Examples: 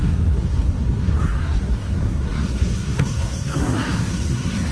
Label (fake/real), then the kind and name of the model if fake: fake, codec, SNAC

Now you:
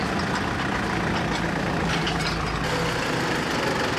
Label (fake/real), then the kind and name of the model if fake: real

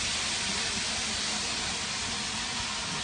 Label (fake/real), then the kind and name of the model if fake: real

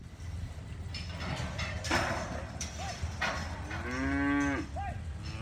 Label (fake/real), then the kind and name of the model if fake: real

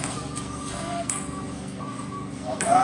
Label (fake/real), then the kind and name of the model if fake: fake, codec, SNAC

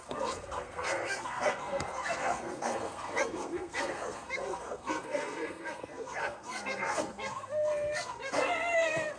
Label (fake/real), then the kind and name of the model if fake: fake, codec, SNAC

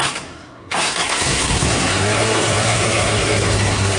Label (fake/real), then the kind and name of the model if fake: fake, codec, SNAC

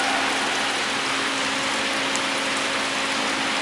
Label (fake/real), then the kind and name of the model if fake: real